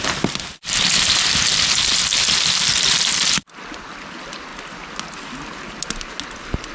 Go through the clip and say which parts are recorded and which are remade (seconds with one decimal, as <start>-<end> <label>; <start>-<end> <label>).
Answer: 0.0-6.7 recorded